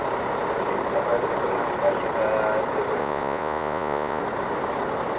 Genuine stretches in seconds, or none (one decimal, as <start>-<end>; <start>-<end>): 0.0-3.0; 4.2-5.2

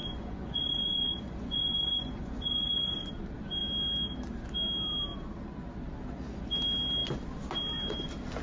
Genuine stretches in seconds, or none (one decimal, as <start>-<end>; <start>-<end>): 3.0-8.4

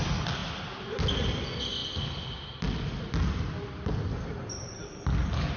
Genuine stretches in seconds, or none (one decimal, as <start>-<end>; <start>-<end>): 0.0-5.6